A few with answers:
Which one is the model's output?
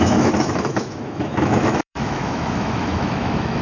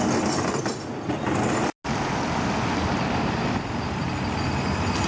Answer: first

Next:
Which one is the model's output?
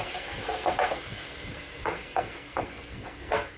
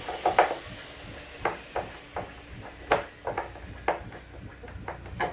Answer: first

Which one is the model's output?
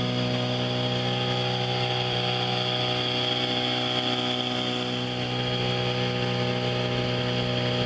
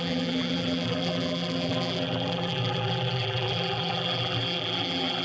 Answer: second